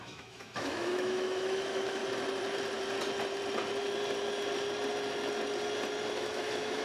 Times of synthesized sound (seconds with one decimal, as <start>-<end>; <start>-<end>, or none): 0.0-2.0; 6.1-6.8

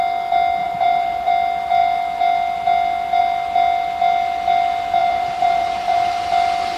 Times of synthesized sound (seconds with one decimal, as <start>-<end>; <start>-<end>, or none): 0.6-1.3; 5.0-6.3